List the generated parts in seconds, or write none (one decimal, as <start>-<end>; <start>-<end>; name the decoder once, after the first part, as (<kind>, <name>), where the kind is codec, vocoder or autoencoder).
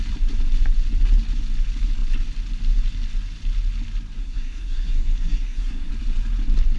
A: 4.2-5.9 (codec, SNAC)